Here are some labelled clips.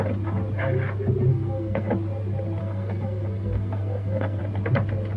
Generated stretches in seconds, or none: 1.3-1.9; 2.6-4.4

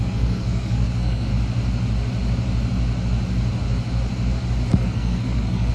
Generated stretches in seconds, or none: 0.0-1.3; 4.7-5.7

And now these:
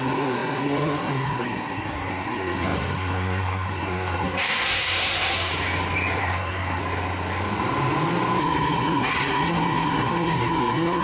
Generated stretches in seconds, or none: 0.0-5.5; 6.2-6.8; 8.4-11.0

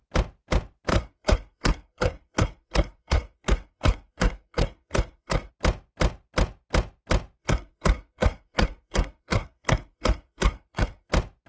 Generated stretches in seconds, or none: 0.9-5.5; 7.4-11.1

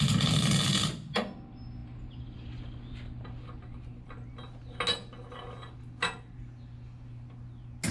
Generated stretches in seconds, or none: none

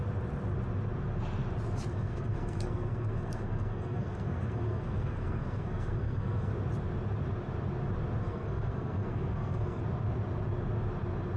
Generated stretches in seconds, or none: 1.9-6.5; 8.2-9.8

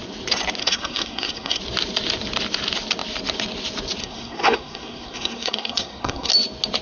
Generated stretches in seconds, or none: 0.6-1.6; 4.0-6.3

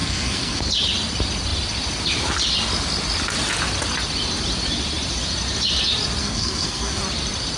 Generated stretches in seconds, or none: 0.0-0.6; 6.2-7.0